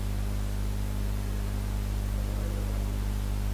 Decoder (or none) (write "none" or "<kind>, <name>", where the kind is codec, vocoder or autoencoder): none